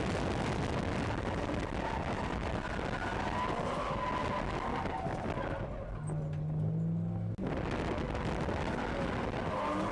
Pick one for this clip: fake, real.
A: real